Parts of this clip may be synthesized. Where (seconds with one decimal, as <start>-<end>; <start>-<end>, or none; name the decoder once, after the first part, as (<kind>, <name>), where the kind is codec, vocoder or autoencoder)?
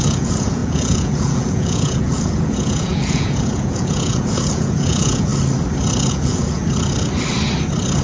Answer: 0.0-5.3 (vocoder, Vocos); 6.1-6.6